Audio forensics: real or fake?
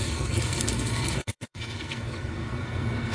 fake